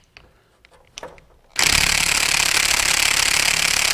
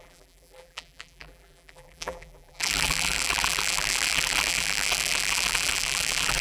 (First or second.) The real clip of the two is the first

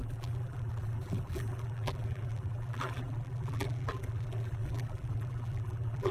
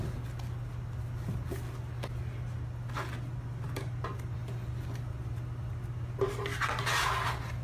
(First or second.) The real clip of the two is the second